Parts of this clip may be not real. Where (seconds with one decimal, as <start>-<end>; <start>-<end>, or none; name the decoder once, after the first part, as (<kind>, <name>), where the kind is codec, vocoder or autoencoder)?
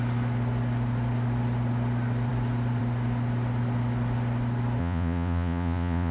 4.8-6.1 (vocoder, Vocos)